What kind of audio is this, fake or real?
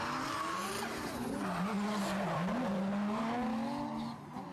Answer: real